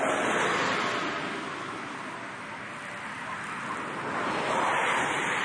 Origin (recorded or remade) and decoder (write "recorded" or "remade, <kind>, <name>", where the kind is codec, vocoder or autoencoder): recorded